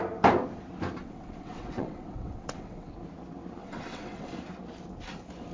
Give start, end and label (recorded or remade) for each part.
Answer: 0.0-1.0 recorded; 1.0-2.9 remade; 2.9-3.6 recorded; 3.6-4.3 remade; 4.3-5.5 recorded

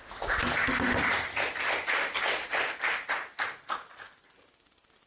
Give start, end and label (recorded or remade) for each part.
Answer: 0.0-5.1 recorded